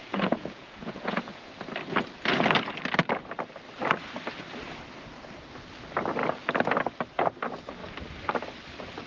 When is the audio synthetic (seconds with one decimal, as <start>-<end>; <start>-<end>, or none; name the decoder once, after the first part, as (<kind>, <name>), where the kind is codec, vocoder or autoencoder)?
0.0-1.4 (vocoder, Vocos)